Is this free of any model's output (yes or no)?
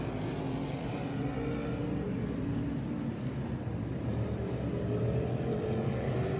yes